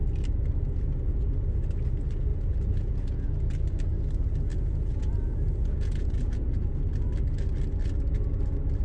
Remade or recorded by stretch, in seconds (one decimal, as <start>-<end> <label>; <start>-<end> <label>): 0.0-2.3 recorded; 2.3-3.3 remade; 3.3-4.5 recorded; 4.5-6.7 remade; 6.7-8.8 recorded